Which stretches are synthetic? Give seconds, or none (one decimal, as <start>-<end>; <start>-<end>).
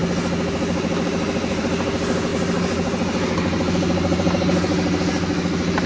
none